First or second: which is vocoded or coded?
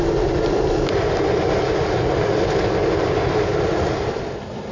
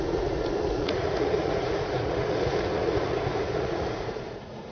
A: second